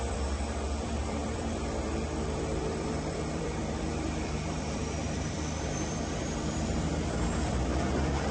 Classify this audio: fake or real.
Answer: fake